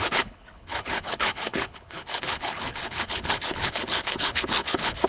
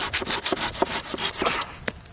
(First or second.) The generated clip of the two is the first